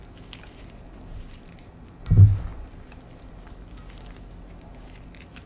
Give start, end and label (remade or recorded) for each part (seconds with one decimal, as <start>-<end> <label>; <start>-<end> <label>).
0.0-5.5 recorded